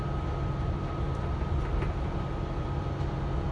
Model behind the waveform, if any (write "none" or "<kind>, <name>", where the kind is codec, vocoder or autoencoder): none